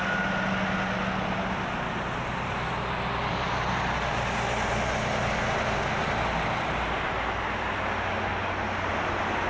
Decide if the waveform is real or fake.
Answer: real